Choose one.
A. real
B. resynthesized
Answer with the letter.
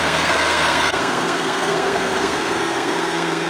B